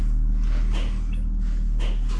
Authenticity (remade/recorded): recorded